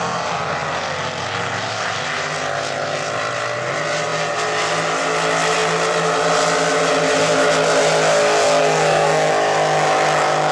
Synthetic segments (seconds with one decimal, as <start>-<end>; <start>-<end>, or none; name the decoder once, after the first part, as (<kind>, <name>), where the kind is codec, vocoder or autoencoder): 8.6-9.3 (codec, SNAC)